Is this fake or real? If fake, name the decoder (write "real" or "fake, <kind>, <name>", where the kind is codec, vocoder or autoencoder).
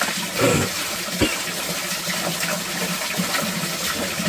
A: fake, vocoder, BigVGAN v2